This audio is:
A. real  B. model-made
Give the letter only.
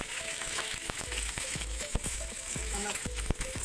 B